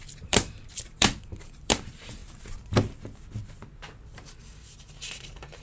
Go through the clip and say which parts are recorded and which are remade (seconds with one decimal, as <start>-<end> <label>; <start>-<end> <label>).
0.0-2.2 remade; 2.2-5.0 recorded; 5.0-5.6 remade